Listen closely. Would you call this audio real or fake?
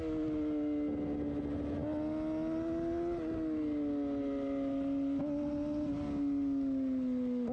real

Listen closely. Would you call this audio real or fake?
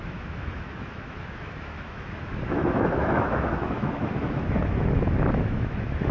fake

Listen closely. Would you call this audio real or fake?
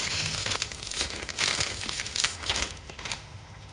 fake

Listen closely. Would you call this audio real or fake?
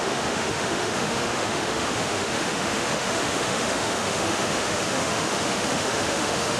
fake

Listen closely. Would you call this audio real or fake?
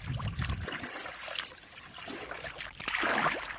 real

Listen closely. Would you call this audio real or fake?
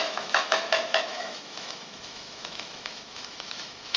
fake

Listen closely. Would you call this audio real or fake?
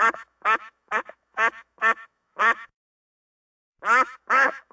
fake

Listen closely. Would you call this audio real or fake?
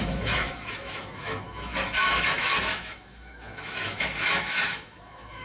fake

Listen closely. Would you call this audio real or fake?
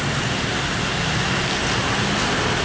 real